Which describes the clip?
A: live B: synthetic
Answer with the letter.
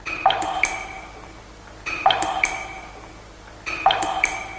B